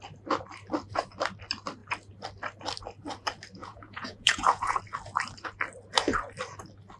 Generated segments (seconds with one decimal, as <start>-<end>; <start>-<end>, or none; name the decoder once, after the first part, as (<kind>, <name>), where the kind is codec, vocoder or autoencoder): 3.6-4.8 (vocoder, Vocos)